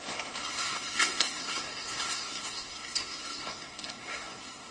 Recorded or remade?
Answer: remade